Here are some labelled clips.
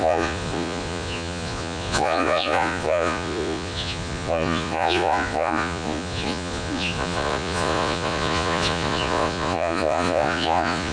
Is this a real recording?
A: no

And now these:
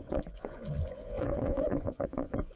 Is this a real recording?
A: no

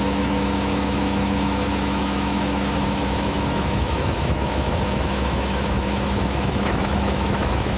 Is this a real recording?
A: no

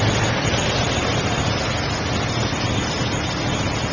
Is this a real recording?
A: yes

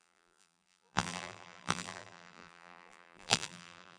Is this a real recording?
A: no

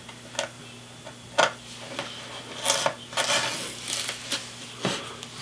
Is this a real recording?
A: yes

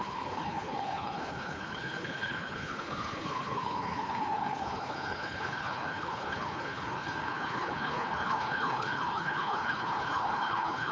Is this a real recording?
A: no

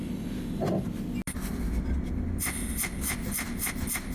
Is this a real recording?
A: yes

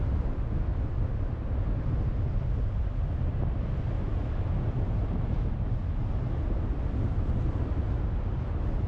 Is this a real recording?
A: yes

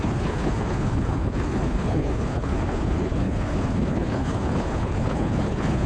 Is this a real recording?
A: no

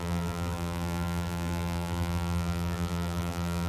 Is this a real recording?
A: no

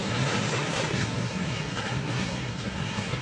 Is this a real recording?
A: no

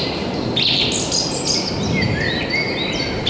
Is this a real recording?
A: yes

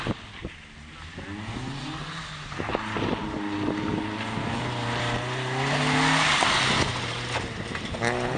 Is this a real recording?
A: yes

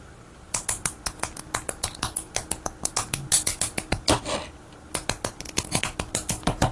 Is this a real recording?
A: yes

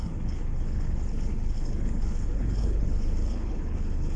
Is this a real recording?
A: no